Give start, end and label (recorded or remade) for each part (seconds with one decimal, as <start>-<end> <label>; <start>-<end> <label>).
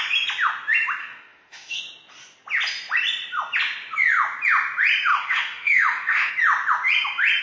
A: 0.0-1.0 recorded; 1.0-1.8 remade; 1.8-5.1 recorded; 5.1-6.3 remade; 6.3-7.4 recorded